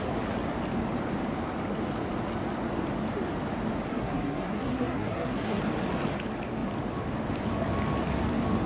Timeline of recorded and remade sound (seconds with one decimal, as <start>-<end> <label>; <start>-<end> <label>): 0.0-3.9 recorded; 3.9-5.6 remade; 5.6-8.7 recorded